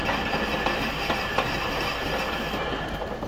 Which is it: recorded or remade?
recorded